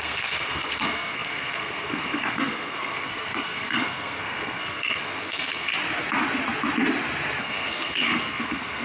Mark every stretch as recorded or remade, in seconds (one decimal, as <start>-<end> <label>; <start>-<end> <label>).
0.0-5.7 remade; 5.7-7.4 recorded; 7.4-8.8 remade